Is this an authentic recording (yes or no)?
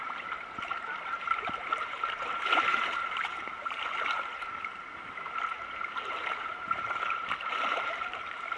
no